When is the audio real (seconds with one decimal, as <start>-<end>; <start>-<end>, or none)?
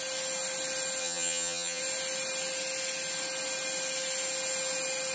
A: 0.0-1.0; 1.8-5.1